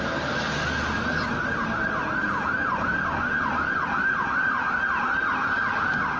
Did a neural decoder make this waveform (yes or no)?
no